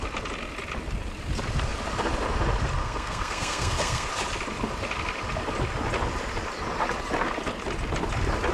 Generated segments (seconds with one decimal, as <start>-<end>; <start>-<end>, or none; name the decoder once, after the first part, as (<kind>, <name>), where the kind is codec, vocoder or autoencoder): 2.8-4.1 (codec, SNAC)